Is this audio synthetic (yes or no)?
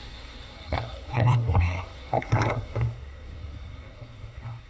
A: yes